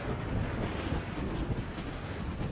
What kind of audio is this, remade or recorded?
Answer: recorded